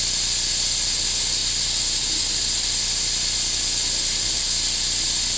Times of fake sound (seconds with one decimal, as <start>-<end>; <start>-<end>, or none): none